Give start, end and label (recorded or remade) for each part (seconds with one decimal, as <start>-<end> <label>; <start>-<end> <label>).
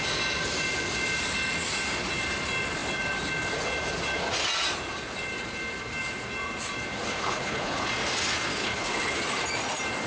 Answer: 0.0-7.1 recorded; 7.1-7.9 remade; 7.9-8.6 recorded; 8.6-9.1 remade; 9.1-10.1 recorded